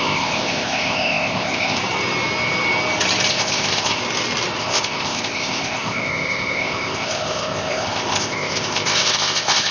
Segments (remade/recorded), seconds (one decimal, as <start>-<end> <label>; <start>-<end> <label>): 0.0-1.8 remade; 1.8-3.3 recorded; 3.3-4.0 remade; 4.0-4.6 recorded; 4.6-9.7 remade